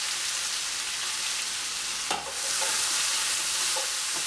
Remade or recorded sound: recorded